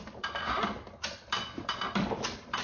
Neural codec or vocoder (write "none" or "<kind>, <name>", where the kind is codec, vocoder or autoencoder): vocoder, BigVGAN v2